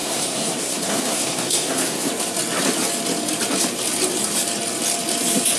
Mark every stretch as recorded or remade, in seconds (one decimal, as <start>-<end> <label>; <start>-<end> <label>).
0.0-2.1 remade; 2.1-5.6 recorded